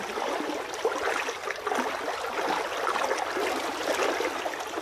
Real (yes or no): yes